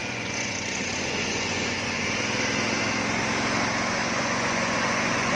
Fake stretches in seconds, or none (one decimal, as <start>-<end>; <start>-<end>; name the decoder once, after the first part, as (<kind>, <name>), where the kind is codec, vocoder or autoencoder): 0.0-2.0 (vocoder, Vocos); 3.9-5.4